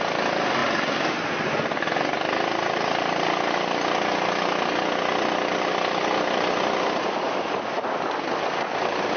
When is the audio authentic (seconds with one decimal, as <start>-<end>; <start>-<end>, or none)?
0.0-0.6; 1.2-9.2